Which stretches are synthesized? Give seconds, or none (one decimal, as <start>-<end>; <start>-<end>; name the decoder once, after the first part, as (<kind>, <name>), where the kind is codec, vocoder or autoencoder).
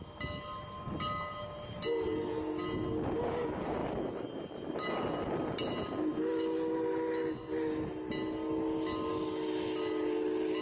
none